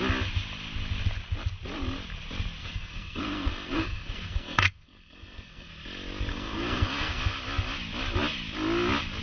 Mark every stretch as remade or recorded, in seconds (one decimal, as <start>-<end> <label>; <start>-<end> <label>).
0.0-2.6 recorded; 2.6-5.7 remade; 5.7-6.3 recorded; 6.3-7.2 remade; 7.2-9.2 recorded